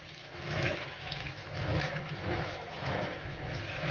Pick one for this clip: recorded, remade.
remade